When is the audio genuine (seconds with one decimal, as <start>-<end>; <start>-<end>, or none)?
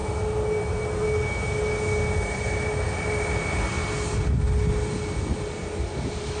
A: 0.0-6.4